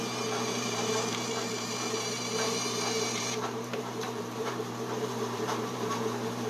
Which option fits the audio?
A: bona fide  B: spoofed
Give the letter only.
B